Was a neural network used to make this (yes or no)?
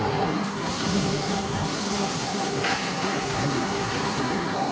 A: yes